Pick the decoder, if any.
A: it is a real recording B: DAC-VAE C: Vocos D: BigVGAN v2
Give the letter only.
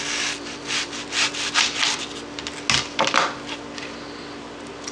A